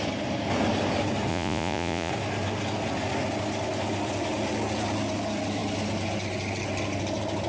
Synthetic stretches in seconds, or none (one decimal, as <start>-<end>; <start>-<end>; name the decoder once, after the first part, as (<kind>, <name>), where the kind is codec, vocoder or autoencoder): 1.3-2.1 (vocoder, Vocos)